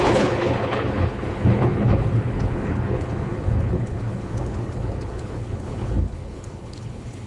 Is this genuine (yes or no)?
no